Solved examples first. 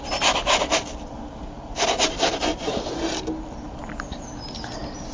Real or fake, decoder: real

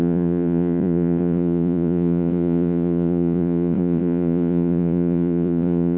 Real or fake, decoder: fake, vocoder, Vocos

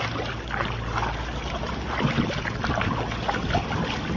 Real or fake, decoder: real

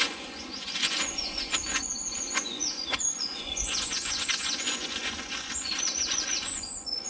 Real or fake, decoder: fake, vocoder, Vocos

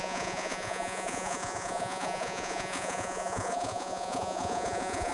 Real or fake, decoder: fake, vocoder, Vocos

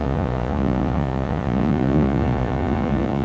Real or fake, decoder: fake, vocoder, Vocos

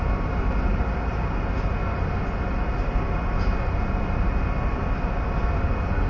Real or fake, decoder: real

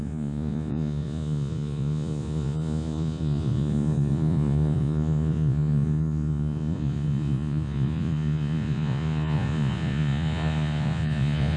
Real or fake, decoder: fake, vocoder, Vocos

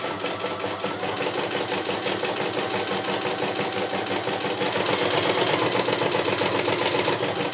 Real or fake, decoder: real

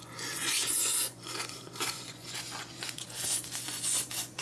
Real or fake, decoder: fake, vocoder, Vocos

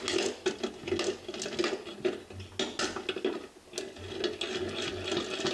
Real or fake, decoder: real